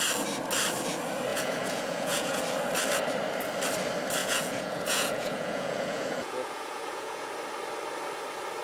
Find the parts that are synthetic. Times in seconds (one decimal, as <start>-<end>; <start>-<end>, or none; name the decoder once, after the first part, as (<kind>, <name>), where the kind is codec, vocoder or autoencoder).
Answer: 1.3-2.4 (vocoder, Vocos); 4.2-7.3